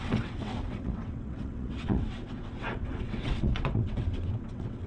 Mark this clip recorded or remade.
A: remade